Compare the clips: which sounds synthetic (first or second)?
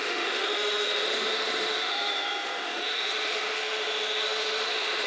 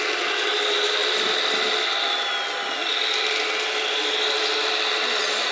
first